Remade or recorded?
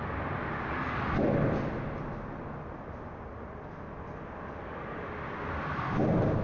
recorded